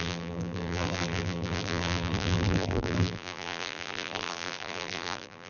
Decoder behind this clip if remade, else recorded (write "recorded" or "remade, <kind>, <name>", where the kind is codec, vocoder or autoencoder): remade, vocoder, BigVGAN v2